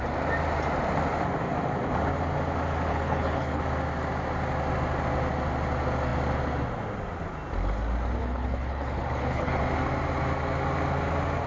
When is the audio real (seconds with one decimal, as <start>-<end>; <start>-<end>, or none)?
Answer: 0.0-2.9; 3.6-8.2; 9.6-11.5